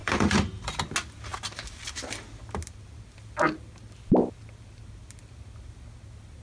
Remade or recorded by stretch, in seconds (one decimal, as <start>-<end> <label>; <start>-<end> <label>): 0.0-0.7 remade; 0.7-6.4 recorded